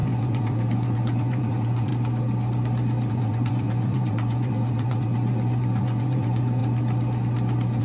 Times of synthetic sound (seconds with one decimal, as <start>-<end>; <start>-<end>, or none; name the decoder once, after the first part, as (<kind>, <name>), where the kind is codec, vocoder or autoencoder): 0.0-1.9 (vocoder, Vocos); 3.1-6.6